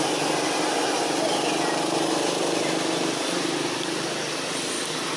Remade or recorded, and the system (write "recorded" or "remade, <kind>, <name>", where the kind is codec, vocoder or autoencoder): recorded